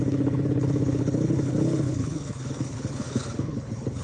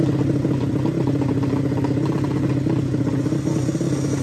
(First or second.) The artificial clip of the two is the first